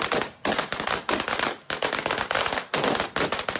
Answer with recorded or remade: recorded